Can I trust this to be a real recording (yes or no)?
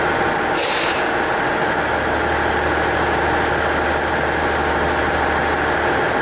yes